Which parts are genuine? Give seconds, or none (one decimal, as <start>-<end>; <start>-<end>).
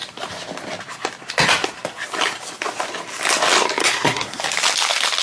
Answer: 0.0-3.8; 4.4-5.2